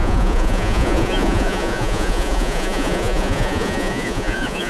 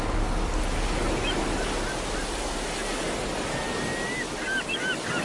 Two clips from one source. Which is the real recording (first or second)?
second